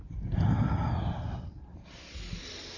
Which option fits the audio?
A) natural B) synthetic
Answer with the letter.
A